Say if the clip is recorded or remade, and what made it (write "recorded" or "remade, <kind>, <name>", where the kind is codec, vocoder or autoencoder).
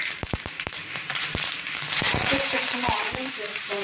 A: remade, vocoder, BigVGAN v2